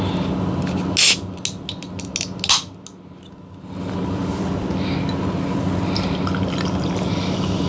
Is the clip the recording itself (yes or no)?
yes